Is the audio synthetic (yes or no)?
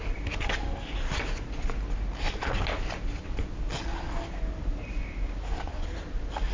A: no